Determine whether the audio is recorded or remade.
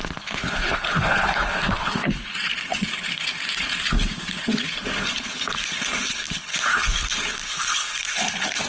remade